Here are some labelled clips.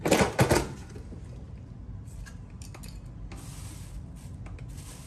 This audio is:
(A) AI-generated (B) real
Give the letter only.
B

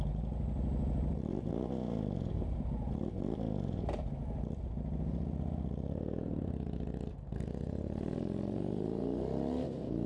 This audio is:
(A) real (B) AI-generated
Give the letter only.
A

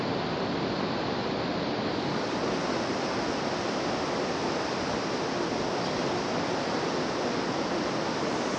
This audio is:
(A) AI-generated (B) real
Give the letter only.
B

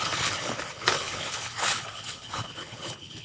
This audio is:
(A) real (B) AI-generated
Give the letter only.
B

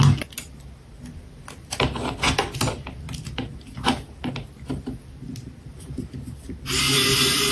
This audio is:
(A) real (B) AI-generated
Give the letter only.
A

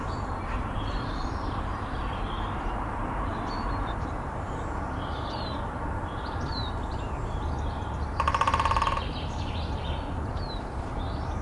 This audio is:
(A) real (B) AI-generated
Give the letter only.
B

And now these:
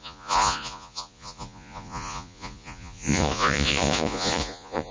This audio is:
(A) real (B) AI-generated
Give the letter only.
B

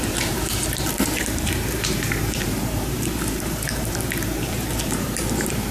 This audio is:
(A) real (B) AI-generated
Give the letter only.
B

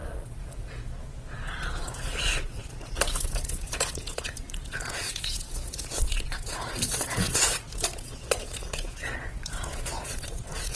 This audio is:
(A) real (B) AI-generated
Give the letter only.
B